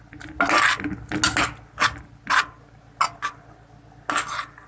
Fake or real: real